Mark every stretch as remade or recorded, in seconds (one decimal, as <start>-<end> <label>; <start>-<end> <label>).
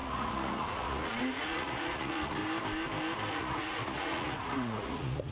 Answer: 0.0-2.4 remade; 2.4-3.3 recorded; 3.3-5.3 remade